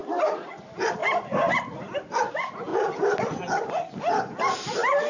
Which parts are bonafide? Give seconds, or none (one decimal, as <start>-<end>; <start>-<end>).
0.0-1.0; 2.3-5.1